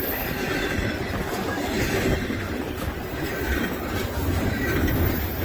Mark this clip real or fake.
real